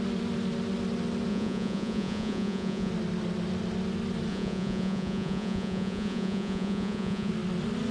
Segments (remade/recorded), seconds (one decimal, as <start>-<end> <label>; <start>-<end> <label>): 0.0-1.3 recorded; 1.3-2.9 remade; 2.9-4.3 recorded; 4.3-7.3 remade; 7.3-7.9 recorded